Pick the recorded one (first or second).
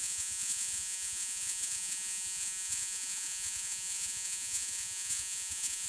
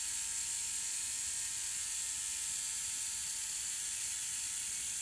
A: second